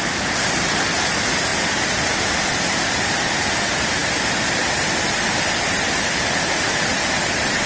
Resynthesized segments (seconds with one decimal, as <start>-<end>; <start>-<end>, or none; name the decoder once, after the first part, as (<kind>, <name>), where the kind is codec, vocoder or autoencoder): 1.5-2.9 (vocoder, BigVGAN v2)